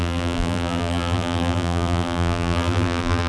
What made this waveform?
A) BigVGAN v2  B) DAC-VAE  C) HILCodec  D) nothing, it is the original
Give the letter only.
A